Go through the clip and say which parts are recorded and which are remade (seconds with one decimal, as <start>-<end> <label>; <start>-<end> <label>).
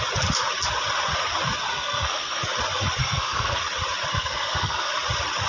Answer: 0.0-1.7 recorded; 1.7-2.4 remade; 2.4-3.0 recorded; 3.0-3.6 remade; 3.6-4.1 recorded; 4.1-4.9 remade; 4.9-5.5 recorded